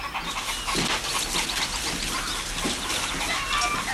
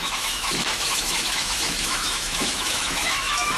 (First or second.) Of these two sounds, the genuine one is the first